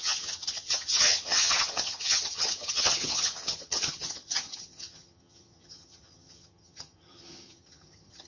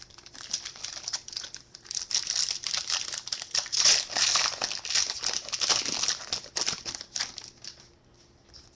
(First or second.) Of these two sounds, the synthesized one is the first